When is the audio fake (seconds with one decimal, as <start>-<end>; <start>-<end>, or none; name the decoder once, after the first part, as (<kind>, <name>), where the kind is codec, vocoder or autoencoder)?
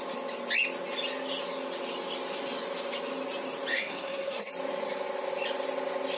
3.7-4.5 (codec, SNAC)